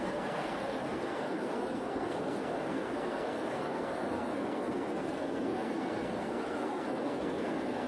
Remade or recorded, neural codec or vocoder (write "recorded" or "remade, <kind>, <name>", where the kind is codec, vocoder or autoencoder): remade, codec, SNAC